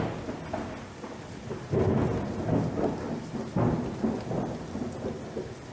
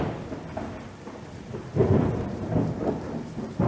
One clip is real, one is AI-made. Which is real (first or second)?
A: first